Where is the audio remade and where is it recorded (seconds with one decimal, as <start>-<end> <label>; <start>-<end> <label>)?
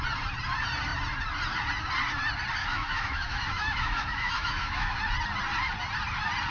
0.0-2.6 recorded; 2.6-5.0 remade; 5.0-6.5 recorded